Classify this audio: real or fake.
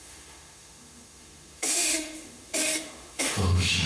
fake